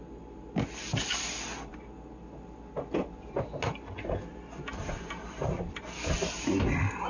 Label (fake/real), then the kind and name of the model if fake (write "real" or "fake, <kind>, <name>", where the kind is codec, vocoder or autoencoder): real